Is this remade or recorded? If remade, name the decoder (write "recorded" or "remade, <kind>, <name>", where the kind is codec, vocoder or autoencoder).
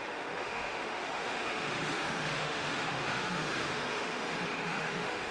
remade, autoencoder, DAC-VAE